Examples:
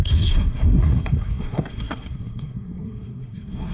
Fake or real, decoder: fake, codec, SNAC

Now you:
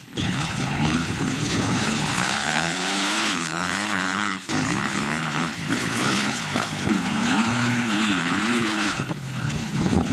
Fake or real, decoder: fake, codec, HILCodec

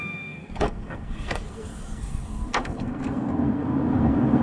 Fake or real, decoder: fake, codec, SNAC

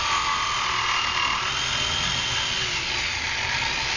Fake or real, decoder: real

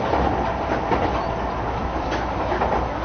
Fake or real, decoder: real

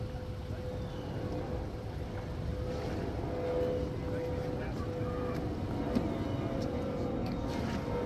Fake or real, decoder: real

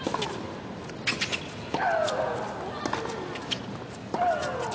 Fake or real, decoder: real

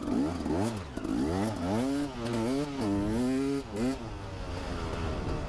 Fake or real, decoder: real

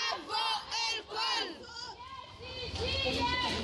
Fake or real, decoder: real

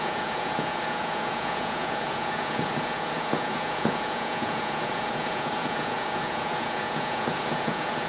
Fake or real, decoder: fake, vocoder, Vocos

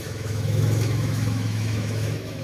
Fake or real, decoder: fake, autoencoder, DAC-VAE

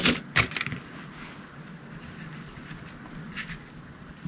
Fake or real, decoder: real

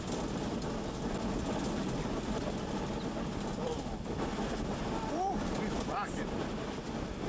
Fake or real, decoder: real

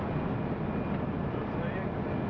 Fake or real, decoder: real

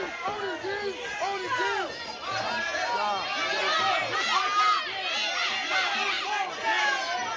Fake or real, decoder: real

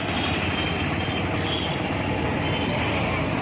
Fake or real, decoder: real